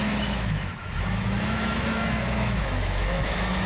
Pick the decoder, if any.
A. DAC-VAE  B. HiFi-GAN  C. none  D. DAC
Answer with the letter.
A